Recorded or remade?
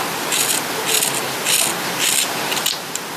recorded